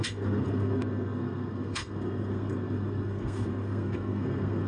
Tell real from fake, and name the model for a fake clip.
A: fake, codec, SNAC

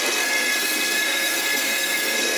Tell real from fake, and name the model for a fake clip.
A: fake, codec, SNAC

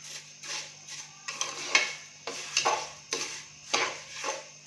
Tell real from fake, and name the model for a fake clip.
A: real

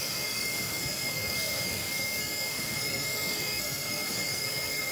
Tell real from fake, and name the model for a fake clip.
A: fake, codec, SNAC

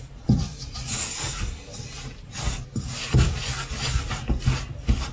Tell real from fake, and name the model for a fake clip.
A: real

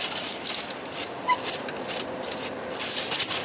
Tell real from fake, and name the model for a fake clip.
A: real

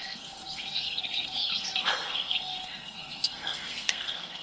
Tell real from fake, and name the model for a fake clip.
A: fake, codec, SNAC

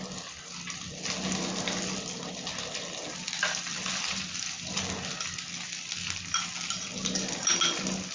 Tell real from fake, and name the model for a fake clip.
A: real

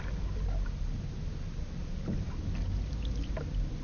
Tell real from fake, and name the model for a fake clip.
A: real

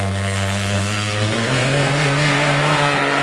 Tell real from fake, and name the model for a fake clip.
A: fake, codec, SNAC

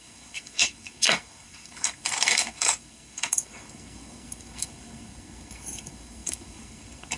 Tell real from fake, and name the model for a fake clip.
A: fake, codec, SNAC